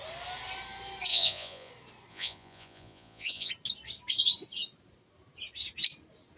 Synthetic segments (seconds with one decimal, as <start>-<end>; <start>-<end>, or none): 1.1-1.7; 2.1-3.5